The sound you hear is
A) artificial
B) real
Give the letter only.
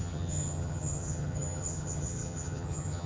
A